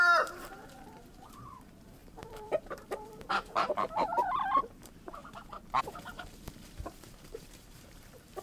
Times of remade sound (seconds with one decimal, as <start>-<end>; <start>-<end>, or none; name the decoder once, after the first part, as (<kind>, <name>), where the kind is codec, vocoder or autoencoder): 0.0-5.2 (vocoder, BigVGAN v2); 5.8-8.4